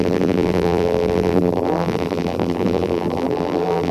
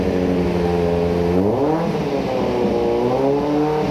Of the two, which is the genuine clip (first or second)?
second